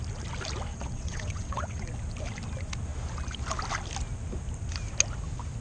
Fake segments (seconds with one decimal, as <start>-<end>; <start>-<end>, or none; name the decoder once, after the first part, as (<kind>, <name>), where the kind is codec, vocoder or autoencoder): 0.7-1.9 (vocoder, WaveNeXt)

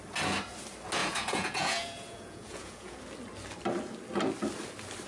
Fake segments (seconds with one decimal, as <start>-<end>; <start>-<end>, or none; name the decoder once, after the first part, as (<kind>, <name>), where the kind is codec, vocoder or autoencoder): 1.0-3.0 (vocoder, Vocos)

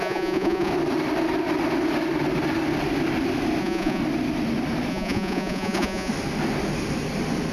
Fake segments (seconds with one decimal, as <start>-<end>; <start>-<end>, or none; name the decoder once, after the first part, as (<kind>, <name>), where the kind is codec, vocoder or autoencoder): 0.0-0.7 (vocoder, Vocos); 3.6-4.0; 4.9-6.1

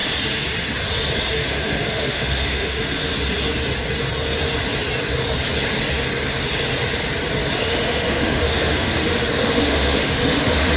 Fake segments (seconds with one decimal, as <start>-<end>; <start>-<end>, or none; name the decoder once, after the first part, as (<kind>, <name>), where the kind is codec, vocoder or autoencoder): 1.3-3.1 (autoencoder, DAC-VAE); 7.6-10.8

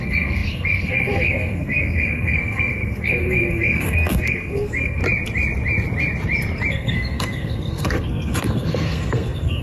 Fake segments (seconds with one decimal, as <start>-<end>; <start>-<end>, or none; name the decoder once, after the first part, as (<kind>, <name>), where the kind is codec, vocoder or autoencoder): 0.0-5.0 (codec, SNAC); 6.7-9.6

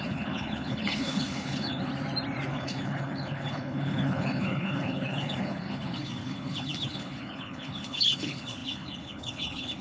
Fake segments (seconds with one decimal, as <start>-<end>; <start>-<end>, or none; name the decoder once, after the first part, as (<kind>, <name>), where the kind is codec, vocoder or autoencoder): 0.0-1.9 (codec, HILCodec); 2.5-9.8

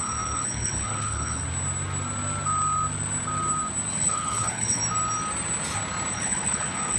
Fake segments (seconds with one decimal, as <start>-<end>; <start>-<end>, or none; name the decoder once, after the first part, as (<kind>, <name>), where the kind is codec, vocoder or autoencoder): 0.0-1.4 (codec, HILCodec); 3.9-4.8; 6.1-7.0

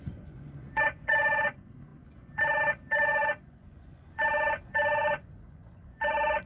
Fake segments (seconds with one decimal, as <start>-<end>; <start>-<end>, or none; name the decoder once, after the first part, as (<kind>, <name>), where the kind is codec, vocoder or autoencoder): 0.0-6.5 (vocoder, Vocos)